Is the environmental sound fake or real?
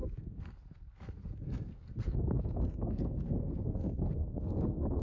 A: fake